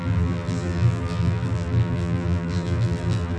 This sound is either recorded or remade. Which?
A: remade